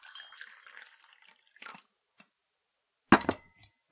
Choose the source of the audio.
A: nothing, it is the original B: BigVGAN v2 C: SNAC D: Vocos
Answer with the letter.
A